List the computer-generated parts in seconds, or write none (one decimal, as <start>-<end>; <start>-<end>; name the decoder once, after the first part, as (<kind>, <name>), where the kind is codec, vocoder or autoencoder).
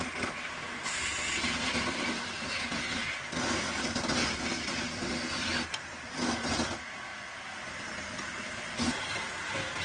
none